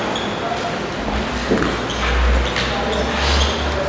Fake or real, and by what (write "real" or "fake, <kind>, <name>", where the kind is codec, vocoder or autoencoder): real